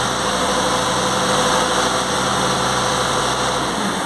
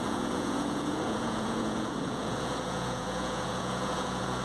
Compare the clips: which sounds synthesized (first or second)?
second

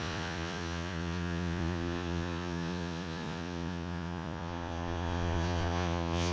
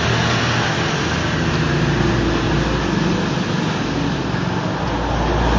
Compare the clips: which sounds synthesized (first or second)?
first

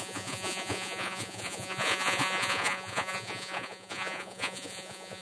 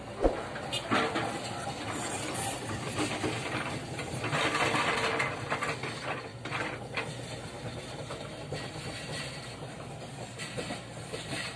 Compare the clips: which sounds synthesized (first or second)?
first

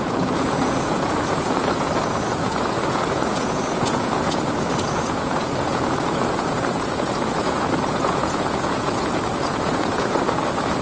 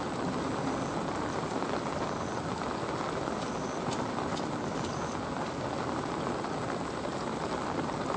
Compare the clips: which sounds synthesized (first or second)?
first